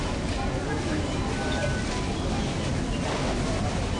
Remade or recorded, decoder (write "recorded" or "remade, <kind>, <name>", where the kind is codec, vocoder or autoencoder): recorded